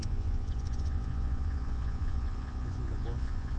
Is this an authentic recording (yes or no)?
no